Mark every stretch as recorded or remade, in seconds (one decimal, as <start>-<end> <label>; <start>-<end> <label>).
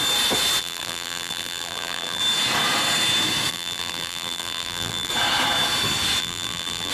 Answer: 0.0-0.6 recorded; 0.6-2.2 remade; 2.2-3.5 recorded; 3.5-5.1 remade; 5.1-6.2 recorded; 6.2-6.9 remade